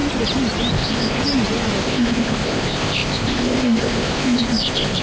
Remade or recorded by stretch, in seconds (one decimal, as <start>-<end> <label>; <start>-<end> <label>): 0.0-0.7 recorded; 0.7-1.2 remade; 1.2-1.8 recorded; 1.8-5.0 remade